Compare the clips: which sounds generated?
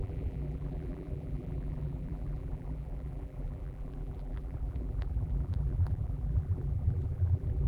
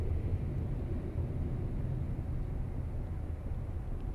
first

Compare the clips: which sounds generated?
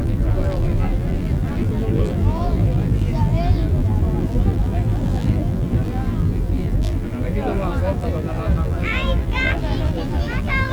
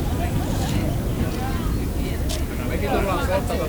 first